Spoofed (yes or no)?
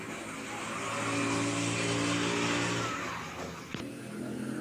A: no